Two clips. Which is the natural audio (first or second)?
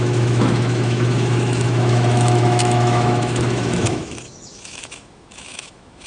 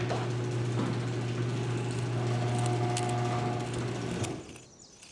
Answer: second